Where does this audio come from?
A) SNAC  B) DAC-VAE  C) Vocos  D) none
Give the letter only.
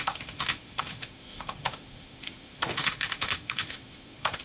B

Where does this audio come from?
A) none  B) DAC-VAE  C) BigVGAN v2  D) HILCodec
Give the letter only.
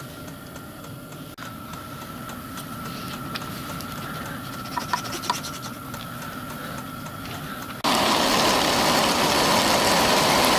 A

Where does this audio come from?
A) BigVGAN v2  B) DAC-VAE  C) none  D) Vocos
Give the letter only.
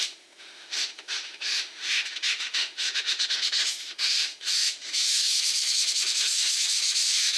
B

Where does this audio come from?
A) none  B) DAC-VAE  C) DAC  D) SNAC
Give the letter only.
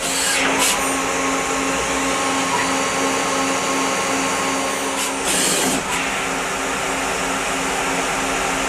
A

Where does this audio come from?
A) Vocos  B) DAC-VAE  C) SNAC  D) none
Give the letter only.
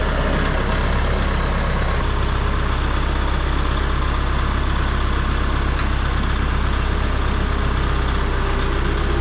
D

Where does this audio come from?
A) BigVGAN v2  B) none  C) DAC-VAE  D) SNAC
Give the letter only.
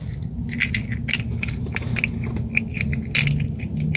B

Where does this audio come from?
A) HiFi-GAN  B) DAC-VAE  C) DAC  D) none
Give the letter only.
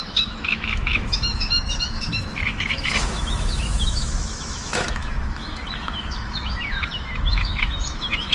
B